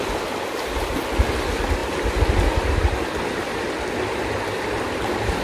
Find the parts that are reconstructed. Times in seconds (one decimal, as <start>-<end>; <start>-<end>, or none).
none

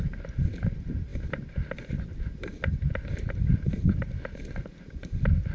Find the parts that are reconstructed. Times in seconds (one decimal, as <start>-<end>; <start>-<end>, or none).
none